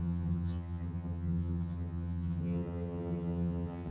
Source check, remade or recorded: remade